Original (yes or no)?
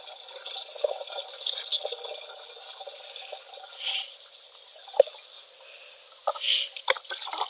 yes